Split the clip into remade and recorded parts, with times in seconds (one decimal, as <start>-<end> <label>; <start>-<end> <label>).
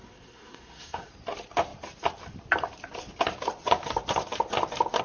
0.0-1.1 remade; 1.1-5.0 recorded